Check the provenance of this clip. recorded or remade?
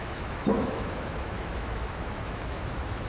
remade